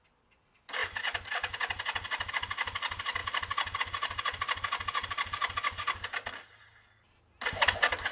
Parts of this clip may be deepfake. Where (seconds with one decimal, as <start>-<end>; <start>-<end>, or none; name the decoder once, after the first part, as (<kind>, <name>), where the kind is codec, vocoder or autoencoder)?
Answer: none